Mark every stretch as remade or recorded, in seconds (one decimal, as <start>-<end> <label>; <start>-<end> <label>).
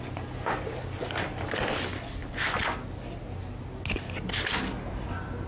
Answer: 0.0-5.5 recorded